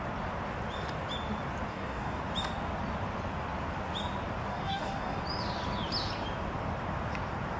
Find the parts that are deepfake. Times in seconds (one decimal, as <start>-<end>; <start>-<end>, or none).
1.7-2.2; 4.5-5.2